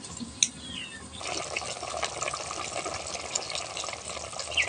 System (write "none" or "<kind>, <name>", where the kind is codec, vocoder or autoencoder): none